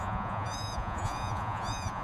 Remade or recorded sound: remade